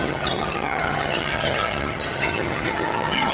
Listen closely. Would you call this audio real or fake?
fake